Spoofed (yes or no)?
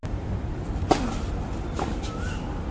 no